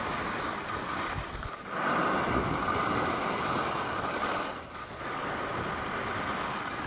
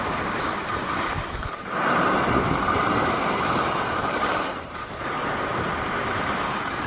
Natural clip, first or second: first